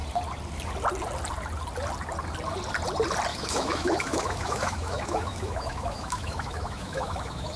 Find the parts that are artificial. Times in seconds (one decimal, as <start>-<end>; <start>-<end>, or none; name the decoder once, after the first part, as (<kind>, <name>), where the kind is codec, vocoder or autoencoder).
3.3-7.6 (autoencoder, DAC-VAE)